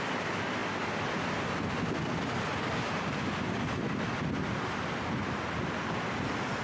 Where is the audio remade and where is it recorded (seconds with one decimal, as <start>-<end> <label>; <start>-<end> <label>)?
0.0-6.6 recorded